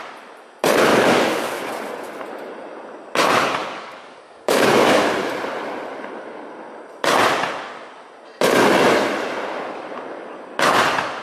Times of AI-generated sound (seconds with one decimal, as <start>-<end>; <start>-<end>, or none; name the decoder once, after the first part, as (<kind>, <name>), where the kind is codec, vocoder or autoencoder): 0.9-1.7 (codec, DAC); 3.6-5.0